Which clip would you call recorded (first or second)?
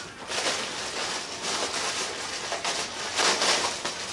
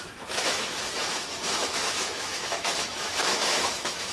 first